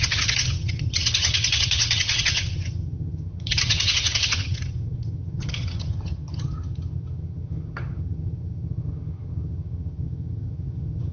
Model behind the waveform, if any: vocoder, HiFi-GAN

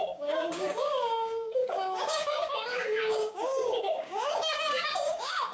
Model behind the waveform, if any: codec, DAC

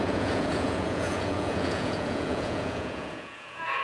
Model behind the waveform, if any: vocoder, Vocos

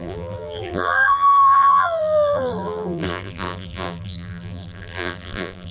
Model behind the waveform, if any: vocoder, BigVGAN v2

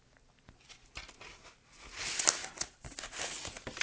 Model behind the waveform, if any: none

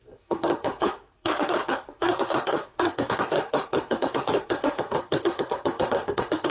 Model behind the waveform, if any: codec, SNAC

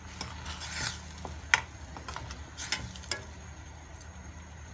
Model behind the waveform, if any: none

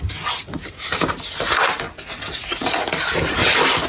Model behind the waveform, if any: none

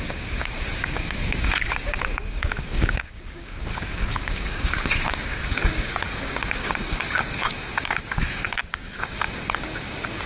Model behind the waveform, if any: codec, DAC